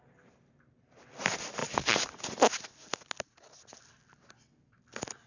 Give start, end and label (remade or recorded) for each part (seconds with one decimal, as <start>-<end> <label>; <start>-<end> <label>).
0.0-5.3 recorded